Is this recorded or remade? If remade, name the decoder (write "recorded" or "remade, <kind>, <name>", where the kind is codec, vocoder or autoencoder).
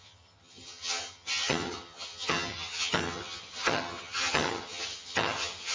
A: remade, vocoder, HiFi-GAN